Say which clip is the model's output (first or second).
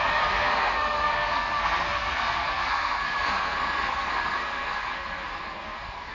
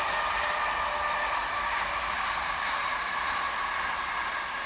first